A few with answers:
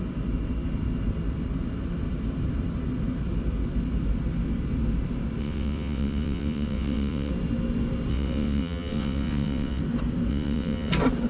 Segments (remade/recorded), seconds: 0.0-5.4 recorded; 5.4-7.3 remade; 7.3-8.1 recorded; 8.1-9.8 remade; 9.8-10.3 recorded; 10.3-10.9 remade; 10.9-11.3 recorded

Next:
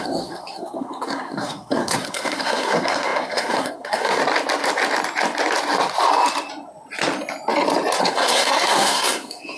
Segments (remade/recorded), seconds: 0.0-4.2 remade; 4.2-8.0 recorded; 8.0-9.6 remade

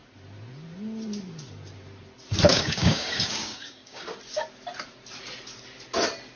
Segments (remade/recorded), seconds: 0.0-2.5 recorded; 2.5-4.0 remade; 4.0-6.4 recorded

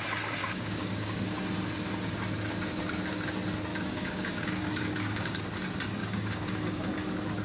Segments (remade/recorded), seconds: 0.0-0.4 recorded; 0.4-1.4 remade; 1.4-3.7 recorded; 3.7-5.4 remade; 5.4-6.0 recorded; 6.0-6.9 remade; 6.9-7.4 recorded

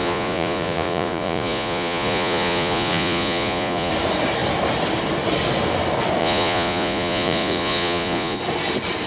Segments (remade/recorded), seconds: 0.0-3.9 remade; 3.9-6.2 recorded; 6.2-8.4 remade; 8.4-9.1 recorded

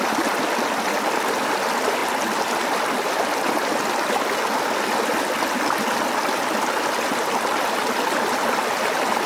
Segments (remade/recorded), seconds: 0.0-9.3 recorded